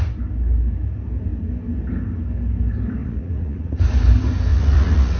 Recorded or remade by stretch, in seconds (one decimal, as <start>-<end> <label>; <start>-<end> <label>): 0.0-3.0 recorded; 3.0-3.8 remade; 3.8-4.5 recorded; 4.5-5.2 remade